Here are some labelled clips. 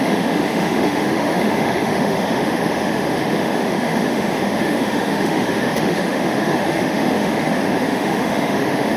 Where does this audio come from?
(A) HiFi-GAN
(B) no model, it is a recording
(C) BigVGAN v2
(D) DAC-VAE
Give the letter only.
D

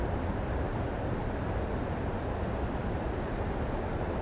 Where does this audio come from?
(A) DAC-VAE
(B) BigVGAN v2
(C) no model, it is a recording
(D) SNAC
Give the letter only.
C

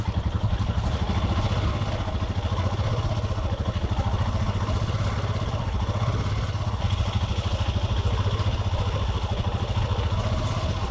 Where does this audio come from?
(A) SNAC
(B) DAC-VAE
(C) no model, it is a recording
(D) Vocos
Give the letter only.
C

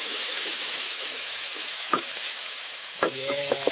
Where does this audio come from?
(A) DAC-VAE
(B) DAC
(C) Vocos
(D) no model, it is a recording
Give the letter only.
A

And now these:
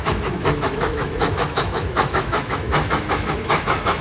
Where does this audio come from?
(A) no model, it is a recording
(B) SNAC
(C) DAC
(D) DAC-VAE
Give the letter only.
D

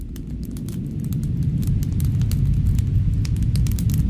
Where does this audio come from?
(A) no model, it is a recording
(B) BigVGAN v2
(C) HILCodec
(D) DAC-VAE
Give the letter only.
A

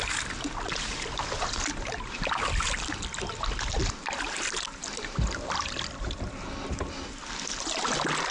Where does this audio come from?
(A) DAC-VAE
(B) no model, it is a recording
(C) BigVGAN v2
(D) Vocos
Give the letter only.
B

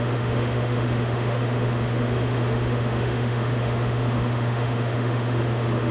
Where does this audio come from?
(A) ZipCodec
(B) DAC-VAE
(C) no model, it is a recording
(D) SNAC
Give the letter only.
B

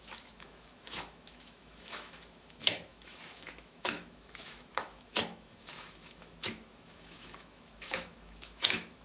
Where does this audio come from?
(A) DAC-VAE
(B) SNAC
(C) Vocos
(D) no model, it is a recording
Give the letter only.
A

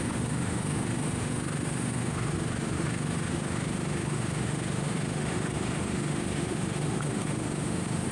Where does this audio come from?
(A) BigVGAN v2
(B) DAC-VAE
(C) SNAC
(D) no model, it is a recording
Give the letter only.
B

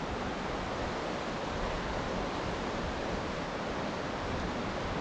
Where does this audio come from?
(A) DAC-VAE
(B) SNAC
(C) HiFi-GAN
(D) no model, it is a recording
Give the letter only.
D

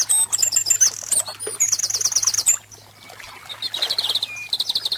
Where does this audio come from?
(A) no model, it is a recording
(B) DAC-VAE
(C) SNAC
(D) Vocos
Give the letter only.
A